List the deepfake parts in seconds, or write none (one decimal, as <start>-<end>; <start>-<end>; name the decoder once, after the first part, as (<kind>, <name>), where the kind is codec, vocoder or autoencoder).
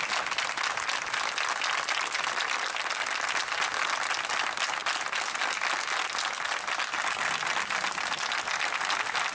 none